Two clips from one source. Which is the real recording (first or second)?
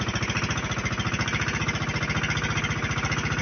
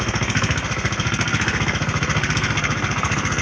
first